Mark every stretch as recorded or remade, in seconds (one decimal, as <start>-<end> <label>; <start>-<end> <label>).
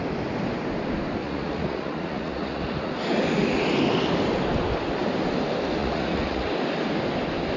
0.0-1.2 recorded; 1.2-2.9 remade; 2.9-5.8 recorded; 5.8-6.5 remade; 6.5-7.6 recorded